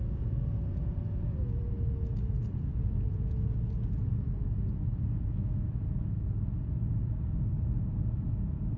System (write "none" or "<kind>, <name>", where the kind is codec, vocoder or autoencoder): vocoder, Vocos